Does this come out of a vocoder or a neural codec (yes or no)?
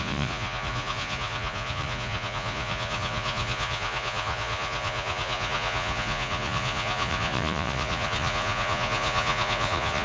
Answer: yes